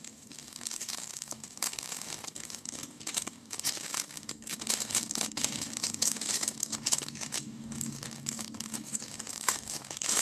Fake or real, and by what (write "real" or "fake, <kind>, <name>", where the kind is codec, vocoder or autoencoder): fake, codec, DAC